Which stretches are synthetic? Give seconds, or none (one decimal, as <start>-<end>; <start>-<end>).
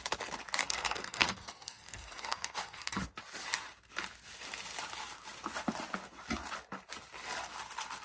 0.6-3.0